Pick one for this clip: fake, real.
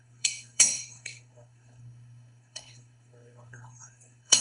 fake